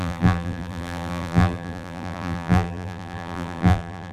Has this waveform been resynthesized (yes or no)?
yes